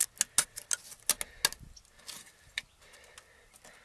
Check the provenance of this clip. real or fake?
real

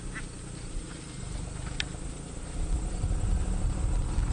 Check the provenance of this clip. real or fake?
real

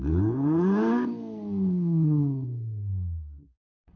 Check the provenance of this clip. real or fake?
fake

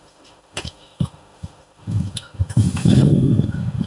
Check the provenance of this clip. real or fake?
fake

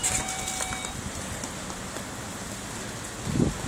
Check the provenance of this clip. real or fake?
fake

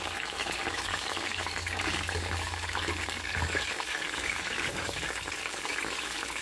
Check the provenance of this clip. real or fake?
fake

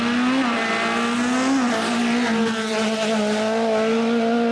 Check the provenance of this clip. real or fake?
real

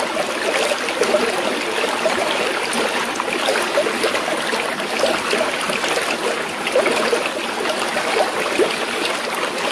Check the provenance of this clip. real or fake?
real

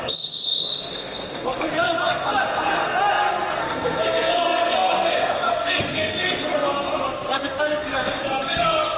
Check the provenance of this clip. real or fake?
fake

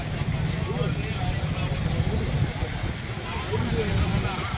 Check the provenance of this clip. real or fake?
real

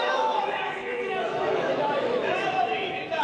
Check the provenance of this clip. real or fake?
fake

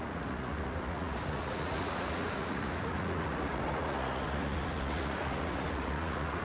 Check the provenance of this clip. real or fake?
fake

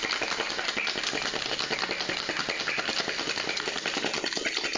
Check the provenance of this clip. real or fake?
real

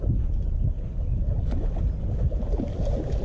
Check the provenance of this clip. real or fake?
real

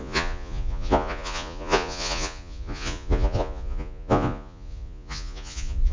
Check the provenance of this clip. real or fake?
fake